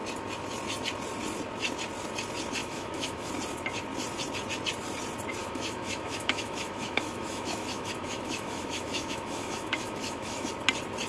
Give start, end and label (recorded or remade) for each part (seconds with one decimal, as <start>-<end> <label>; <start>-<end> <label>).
0.0-2.6 recorded; 2.6-3.3 remade; 3.3-5.4 recorded; 5.4-10.5 remade; 10.5-11.1 recorded